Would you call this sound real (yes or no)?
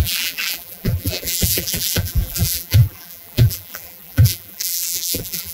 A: no